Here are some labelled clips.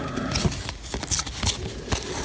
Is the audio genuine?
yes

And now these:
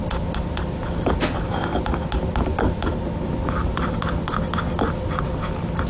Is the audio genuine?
yes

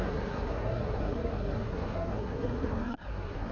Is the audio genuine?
no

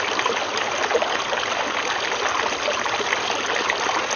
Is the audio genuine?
yes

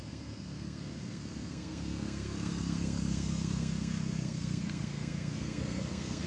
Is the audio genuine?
no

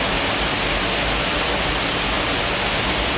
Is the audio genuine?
yes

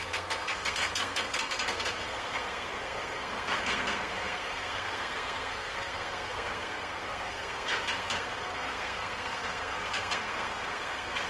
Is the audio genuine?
no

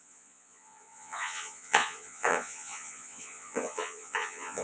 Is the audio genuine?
no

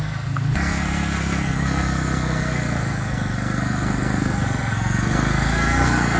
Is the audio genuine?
no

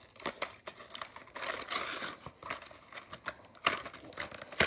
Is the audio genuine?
yes